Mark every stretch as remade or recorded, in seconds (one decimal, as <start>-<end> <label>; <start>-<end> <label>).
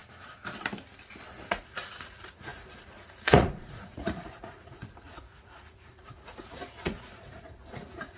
0.0-1.5 recorded; 1.5-8.2 remade